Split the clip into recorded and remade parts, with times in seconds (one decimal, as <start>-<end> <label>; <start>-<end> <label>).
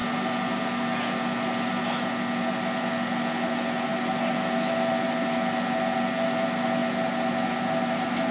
0.0-8.3 recorded